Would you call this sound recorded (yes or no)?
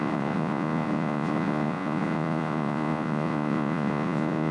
no